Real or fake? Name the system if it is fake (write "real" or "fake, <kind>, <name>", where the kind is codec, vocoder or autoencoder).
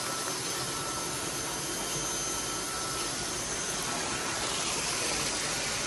real